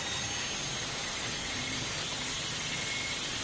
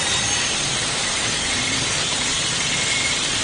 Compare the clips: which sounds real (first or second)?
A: first